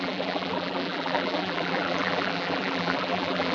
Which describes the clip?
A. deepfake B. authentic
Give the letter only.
A